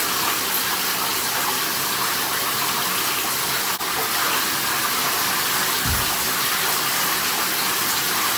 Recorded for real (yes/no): yes